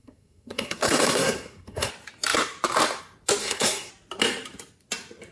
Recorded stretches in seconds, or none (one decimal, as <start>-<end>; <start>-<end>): 1.9-3.4; 3.9-5.3